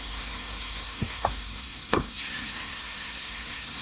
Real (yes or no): no